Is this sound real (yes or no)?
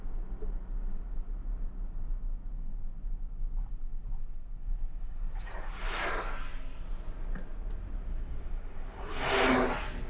yes